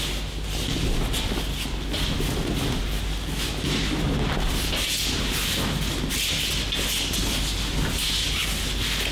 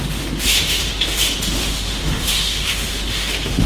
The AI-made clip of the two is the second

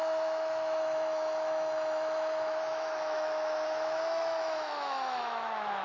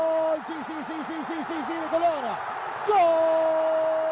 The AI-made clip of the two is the first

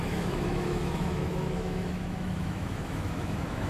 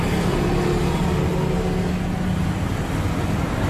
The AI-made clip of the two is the first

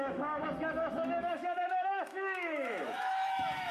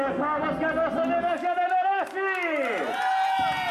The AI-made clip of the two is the first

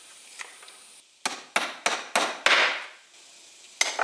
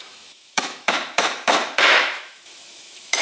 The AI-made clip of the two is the second